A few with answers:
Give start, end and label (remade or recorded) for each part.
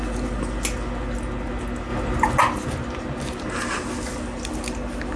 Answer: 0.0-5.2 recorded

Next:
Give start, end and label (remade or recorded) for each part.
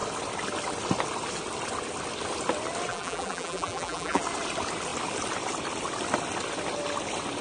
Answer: 0.0-2.9 recorded; 2.9-4.2 remade; 4.2-7.4 recorded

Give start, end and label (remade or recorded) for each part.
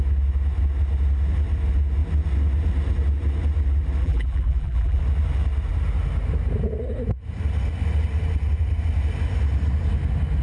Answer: 0.0-4.0 recorded; 4.0-5.0 remade; 5.0-10.4 recorded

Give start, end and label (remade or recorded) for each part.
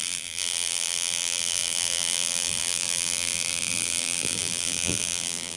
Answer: 0.0-5.6 remade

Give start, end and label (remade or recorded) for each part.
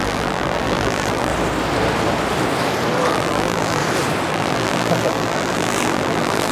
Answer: 0.0-1.3 remade; 1.3-3.1 recorded; 3.1-3.8 remade; 3.8-4.3 recorded; 4.3-6.5 remade